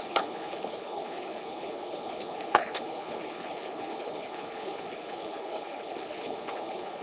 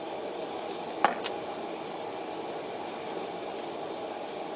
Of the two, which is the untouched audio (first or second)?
second